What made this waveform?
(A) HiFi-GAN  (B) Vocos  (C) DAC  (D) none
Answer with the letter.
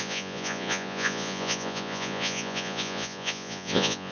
B